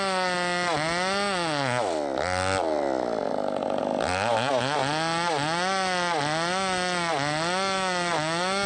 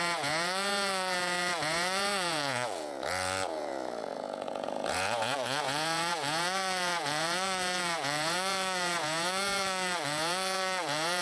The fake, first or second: second